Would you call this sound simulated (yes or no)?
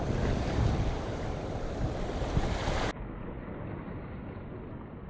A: no